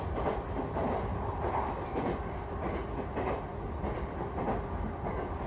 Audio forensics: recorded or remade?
recorded